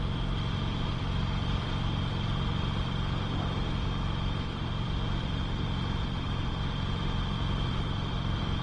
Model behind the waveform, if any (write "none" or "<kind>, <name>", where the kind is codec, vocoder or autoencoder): vocoder, BigVGAN v2